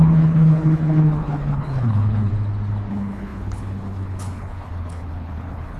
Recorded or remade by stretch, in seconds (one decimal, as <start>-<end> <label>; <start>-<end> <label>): 0.0-2.3 remade; 2.3-2.9 recorded; 2.9-5.8 remade